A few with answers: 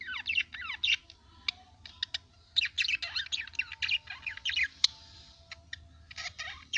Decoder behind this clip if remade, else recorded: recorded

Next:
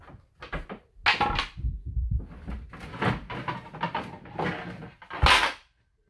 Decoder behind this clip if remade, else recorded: recorded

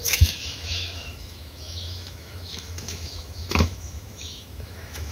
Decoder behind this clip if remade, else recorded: remade, autoencoder, DAC-VAE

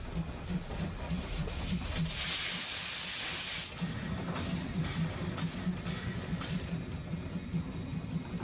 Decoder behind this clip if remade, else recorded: recorded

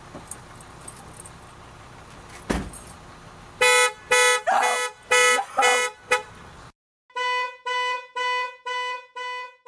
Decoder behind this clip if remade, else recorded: recorded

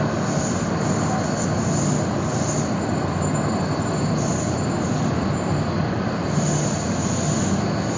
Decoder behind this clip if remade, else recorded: recorded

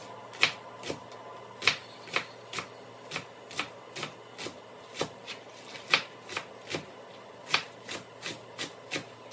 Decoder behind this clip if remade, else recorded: recorded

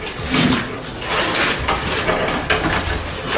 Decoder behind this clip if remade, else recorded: recorded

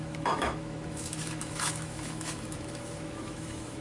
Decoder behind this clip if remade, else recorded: remade, autoencoder, DAC-VAE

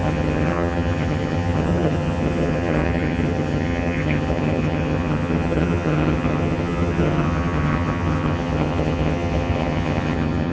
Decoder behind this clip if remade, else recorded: remade, vocoder, HiFi-GAN